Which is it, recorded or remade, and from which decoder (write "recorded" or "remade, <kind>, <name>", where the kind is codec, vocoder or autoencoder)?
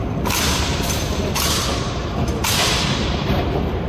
recorded